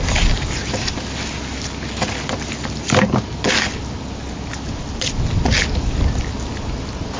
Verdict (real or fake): real